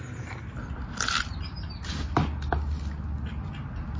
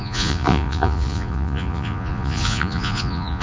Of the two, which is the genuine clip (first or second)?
first